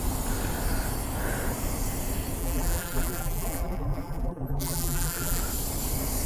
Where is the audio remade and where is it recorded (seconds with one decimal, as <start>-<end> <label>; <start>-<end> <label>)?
0.0-2.4 recorded; 2.4-5.4 remade; 5.4-6.3 recorded